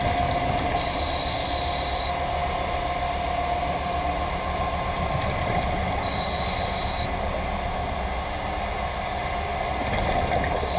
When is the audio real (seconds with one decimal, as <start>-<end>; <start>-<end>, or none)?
0.0-10.8